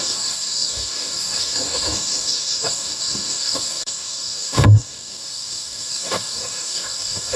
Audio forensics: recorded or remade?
remade